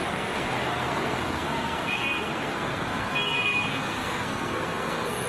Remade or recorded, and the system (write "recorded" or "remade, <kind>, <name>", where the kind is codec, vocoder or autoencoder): remade, codec, SNAC